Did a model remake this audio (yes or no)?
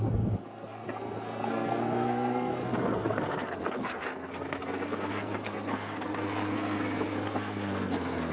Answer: yes